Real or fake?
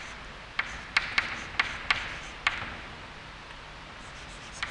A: real